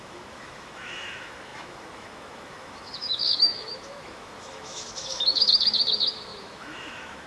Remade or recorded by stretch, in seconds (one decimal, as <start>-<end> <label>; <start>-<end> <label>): 0.0-7.3 remade